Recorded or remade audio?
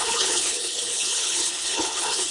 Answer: remade